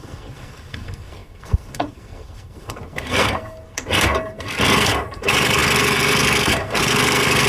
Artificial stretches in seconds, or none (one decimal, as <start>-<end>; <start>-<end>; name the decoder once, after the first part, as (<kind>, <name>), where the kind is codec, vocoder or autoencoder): 0.0-7.5 (codec, SNAC)